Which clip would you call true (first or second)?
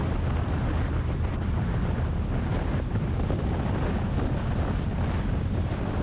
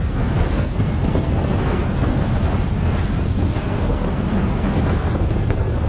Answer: first